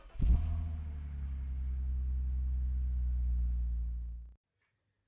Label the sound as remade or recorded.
recorded